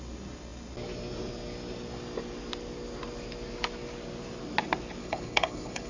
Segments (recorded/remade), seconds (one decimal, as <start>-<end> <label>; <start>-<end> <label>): 0.0-5.0 recorded; 5.0-5.9 remade